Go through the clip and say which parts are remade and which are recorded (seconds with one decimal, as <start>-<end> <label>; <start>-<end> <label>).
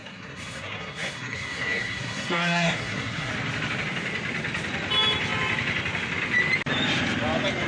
0.0-3.3 remade; 3.3-7.7 recorded